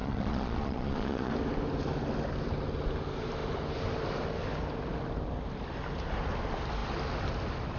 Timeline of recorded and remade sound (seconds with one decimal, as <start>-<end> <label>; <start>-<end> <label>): 0.0-1.3 remade; 1.3-7.8 recorded